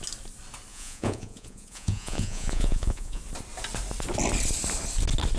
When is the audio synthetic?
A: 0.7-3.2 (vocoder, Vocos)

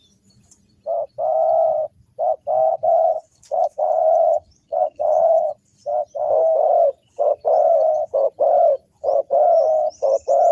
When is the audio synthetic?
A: 2.7-5.5 (vocoder, Vocos)

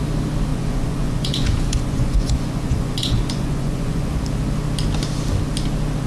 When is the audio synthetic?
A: 0.5-4.2 (vocoder, Vocos)

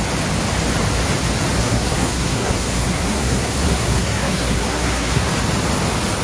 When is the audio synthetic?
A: 1.6-5.3 (codec, SNAC)